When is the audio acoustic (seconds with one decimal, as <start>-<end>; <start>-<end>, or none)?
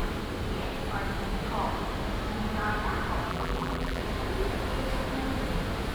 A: 0.0-3.3; 4.0-5.9